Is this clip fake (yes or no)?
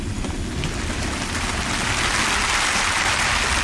no